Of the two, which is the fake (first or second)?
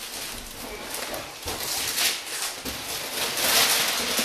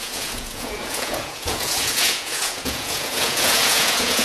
second